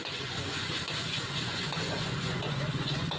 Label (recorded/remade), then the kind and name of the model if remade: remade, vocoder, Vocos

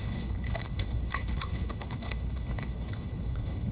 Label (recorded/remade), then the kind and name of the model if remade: remade, codec, HILCodec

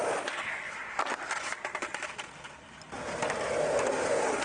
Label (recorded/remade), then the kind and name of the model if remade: recorded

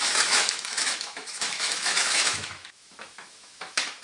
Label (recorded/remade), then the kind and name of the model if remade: remade, autoencoder, DAC-VAE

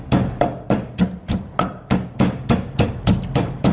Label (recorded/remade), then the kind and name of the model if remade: recorded